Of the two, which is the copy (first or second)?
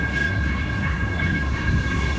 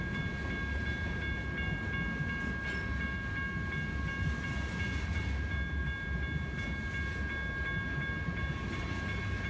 first